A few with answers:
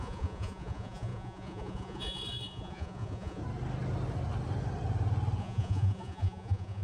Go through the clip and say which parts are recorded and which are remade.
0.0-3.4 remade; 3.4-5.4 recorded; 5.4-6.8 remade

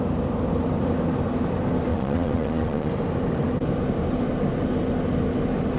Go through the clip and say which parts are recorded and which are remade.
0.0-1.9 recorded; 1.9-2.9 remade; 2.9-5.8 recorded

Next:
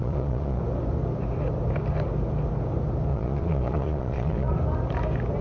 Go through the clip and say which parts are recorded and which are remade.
0.0-0.6 remade; 0.6-3.1 recorded; 3.1-4.5 remade; 4.5-5.4 recorded

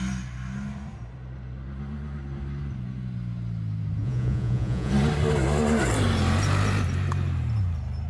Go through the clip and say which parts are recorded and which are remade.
0.0-4.0 recorded; 4.0-4.9 remade; 4.9-8.1 recorded

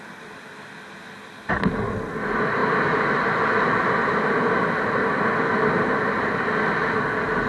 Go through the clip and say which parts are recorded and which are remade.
0.0-7.5 recorded

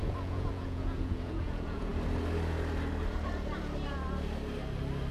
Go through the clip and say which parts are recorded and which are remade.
0.0-1.9 remade; 1.9-5.1 recorded

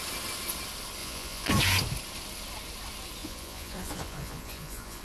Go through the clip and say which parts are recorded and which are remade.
0.0-1.0 recorded; 1.0-1.5 remade; 1.5-3.2 recorded; 3.2-5.0 remade

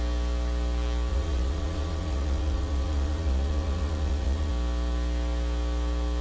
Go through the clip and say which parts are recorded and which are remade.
0.0-1.1 recorded; 1.1-4.5 remade; 4.5-6.2 recorded